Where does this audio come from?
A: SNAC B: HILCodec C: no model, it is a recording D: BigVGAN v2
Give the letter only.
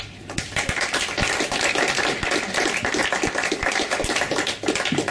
C